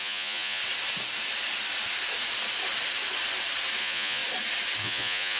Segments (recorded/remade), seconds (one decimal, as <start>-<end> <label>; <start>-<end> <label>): 0.0-0.6 remade; 0.6-3.8 recorded; 3.8-4.2 remade; 4.2-4.8 recorded; 4.8-5.4 remade